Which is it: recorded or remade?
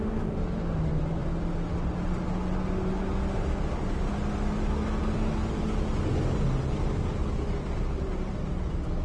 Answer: recorded